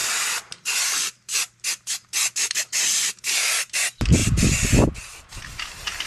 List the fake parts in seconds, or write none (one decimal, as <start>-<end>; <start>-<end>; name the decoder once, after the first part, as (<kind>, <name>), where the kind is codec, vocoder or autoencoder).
0.0-3.7 (vocoder, BigVGAN v2); 4.2-4.8